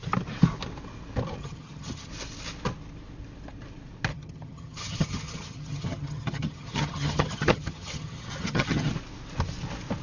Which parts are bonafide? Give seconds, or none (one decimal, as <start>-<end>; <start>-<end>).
0.0-1.4; 2.1-4.1; 8.9-10.0